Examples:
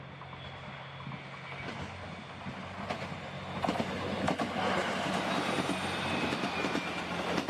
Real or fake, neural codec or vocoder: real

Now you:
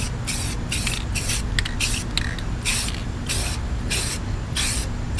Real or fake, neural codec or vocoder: real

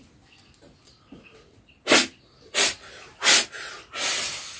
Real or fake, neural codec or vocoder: real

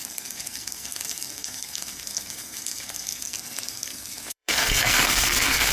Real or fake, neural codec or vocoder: fake, codec, SNAC